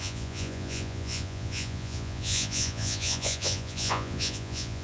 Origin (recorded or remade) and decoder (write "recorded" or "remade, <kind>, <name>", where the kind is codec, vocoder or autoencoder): remade, vocoder, Vocos